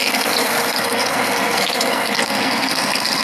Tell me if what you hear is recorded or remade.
remade